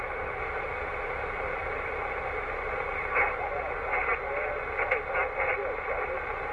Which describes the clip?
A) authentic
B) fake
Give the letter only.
A